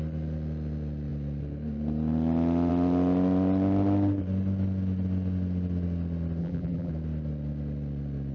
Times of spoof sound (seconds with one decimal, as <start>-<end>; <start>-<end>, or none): 6.4-6.9